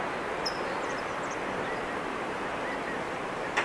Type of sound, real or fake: real